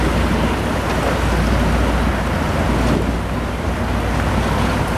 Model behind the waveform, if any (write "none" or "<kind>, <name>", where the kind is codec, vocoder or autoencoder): none